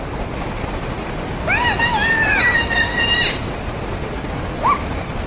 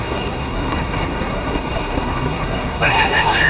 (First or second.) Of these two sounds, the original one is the first